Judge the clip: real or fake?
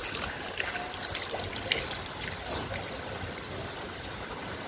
real